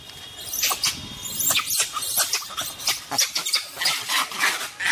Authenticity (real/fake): real